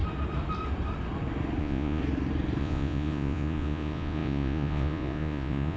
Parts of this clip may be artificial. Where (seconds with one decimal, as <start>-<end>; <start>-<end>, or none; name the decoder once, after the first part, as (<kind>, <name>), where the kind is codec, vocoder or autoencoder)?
1.6-2.0 (vocoder, Vocos); 2.6-5.8